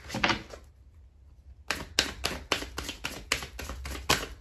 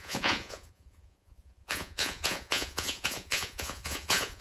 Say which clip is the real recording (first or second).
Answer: first